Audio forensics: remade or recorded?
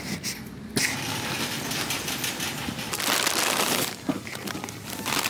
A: recorded